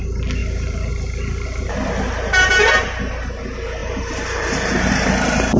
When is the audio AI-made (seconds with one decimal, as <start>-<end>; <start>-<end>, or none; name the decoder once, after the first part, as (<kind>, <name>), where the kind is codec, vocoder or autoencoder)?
0.4-0.9 (vocoder, BigVGAN v2); 1.6-3.1; 3.8-4.9